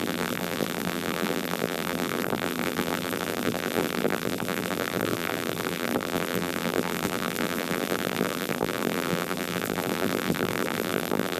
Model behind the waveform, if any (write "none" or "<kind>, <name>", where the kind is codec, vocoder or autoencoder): vocoder, BigVGAN v2